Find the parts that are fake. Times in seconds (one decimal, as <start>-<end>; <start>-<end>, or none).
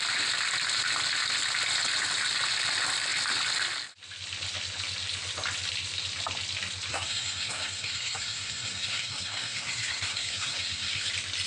6.9-11.1